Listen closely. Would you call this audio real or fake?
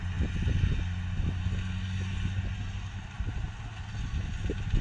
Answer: real